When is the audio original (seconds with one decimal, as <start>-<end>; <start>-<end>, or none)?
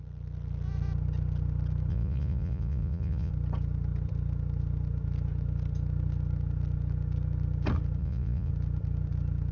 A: 0.0-1.9; 3.3-8.0; 8.5-9.5